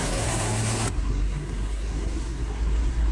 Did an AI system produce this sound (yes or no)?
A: yes